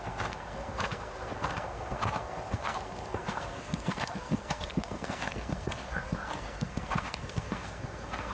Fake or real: fake